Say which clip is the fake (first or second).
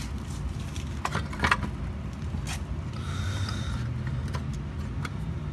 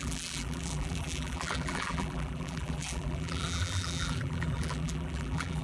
second